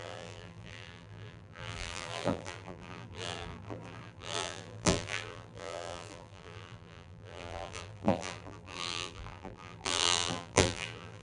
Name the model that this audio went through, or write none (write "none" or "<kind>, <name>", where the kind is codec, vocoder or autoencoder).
vocoder, BigVGAN v2